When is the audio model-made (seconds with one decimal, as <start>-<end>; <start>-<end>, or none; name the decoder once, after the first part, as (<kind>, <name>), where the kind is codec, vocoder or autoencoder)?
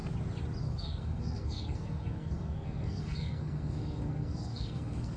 0.6-5.2 (codec, SNAC)